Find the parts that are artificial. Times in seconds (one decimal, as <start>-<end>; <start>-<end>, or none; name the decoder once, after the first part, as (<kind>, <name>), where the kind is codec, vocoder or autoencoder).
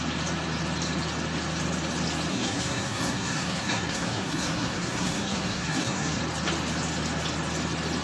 2.3-6.2 (codec, SNAC)